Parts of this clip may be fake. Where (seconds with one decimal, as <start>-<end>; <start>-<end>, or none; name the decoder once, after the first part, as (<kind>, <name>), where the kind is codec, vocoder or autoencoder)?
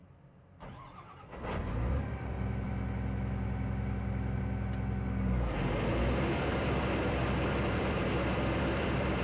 0.0-4.4 (vocoder, BigVGAN v2); 6.5-9.2